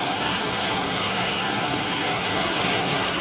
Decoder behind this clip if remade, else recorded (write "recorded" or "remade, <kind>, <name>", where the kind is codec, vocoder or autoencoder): remade, codec, SNAC